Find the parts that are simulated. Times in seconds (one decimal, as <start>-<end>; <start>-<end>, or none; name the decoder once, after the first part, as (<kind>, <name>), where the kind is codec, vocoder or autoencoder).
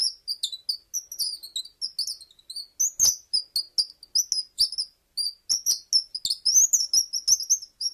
none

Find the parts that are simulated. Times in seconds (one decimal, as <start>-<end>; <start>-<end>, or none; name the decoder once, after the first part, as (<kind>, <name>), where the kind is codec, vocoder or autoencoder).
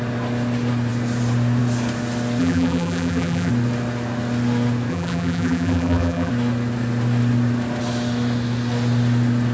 2.4-3.5 (vocoder, BigVGAN v2); 4.9-6.3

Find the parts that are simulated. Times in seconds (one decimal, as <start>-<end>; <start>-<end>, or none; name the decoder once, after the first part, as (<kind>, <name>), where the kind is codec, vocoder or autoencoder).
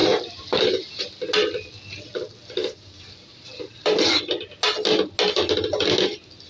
0.0-1.0 (vocoder, BigVGAN v2); 2.6-4.2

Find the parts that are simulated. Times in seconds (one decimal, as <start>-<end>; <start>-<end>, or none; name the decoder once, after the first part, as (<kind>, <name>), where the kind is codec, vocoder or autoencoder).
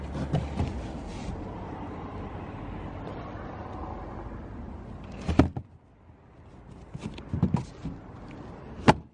1.2-2.6 (vocoder, BigVGAN v2)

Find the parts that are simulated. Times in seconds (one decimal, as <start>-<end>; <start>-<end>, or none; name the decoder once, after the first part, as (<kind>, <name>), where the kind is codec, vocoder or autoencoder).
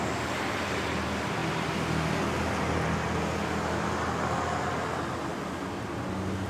0.0-1.4 (vocoder, BigVGAN v2); 4.7-5.3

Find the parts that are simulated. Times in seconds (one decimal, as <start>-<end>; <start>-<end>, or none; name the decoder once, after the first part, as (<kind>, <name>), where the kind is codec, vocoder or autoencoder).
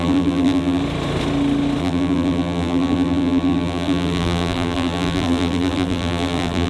0.0-0.8 (vocoder, BigVGAN v2); 1.8-6.7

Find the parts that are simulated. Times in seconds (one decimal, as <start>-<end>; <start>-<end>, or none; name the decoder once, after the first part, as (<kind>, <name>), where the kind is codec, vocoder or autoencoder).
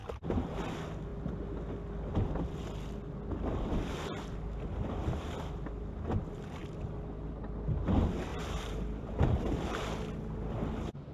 8.3-10.0 (vocoder, BigVGAN v2)